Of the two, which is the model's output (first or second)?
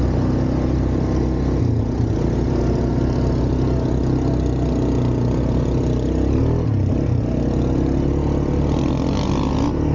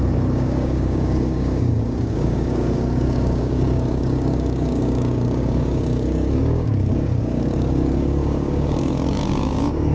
second